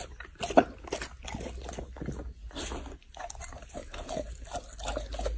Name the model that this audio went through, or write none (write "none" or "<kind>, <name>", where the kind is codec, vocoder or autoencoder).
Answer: none